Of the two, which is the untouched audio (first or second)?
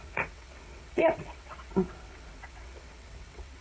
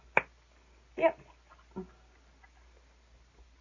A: second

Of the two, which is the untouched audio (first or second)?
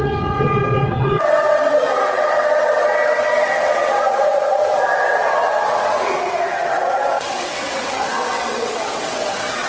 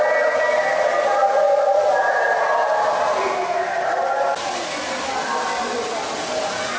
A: second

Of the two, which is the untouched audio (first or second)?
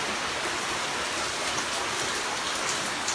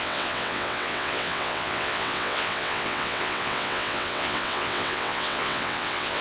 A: first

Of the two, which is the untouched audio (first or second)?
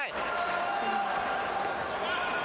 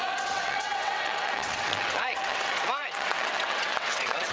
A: first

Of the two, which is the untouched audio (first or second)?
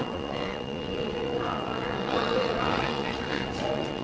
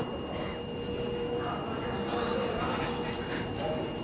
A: second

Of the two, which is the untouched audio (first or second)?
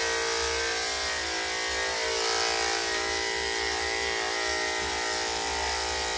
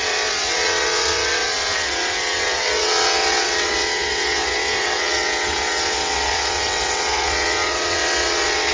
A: first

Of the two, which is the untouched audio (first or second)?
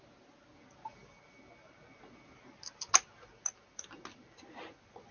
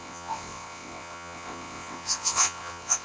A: first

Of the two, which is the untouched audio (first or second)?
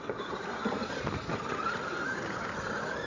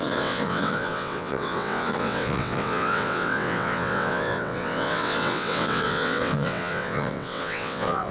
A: first